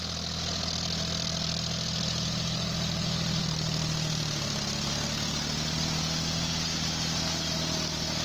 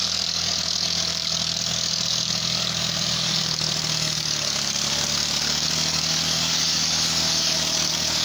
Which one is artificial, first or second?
second